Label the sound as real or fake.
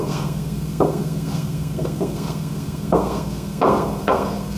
fake